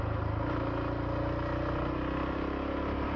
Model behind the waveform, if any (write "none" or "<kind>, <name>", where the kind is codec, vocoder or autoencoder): none